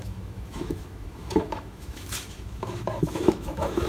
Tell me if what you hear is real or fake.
fake